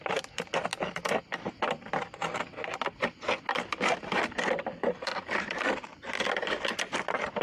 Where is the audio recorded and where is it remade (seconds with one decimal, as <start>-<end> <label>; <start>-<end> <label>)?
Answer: 0.0-7.4 recorded